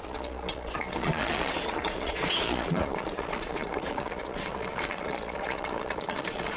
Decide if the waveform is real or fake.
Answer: fake